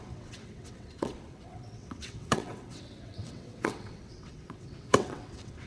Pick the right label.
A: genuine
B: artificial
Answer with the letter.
B